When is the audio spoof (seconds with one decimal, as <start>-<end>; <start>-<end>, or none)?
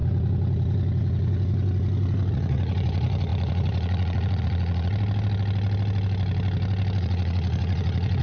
2.3-4.9; 7.0-8.2